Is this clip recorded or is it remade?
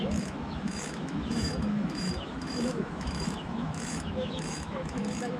remade